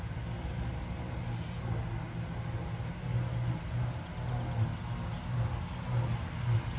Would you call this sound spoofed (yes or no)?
no